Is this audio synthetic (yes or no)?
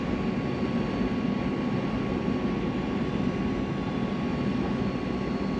no